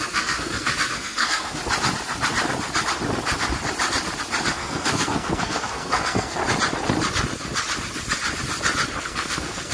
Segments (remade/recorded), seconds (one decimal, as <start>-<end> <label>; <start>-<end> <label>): 0.0-1.6 remade; 1.6-4.5 recorded; 4.5-6.4 remade; 6.4-9.0 recorded; 9.0-9.7 remade